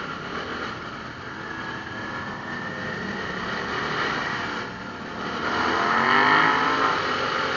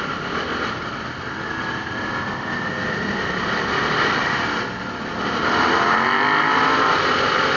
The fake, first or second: second